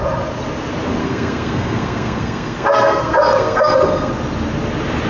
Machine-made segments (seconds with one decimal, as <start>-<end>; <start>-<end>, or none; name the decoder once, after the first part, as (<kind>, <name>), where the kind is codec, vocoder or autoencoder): 1.0-4.1 (codec, SNAC)